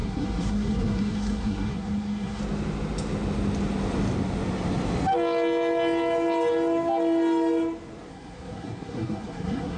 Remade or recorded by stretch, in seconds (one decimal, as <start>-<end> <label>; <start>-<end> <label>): 0.0-2.4 remade; 2.4-8.1 recorded; 8.1-9.8 remade